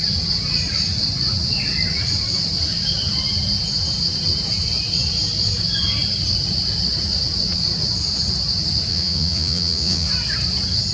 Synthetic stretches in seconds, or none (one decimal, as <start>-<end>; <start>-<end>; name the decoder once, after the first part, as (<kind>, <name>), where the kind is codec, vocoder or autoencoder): 8.9-10.1 (vocoder, Vocos)